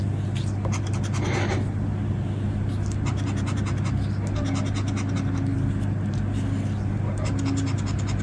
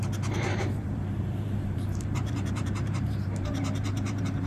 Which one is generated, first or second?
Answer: second